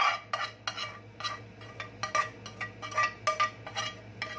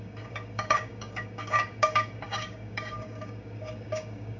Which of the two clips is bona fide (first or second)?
first